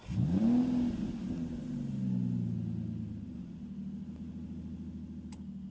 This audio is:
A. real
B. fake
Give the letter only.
A